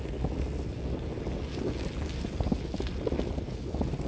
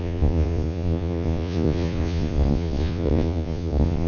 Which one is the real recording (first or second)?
first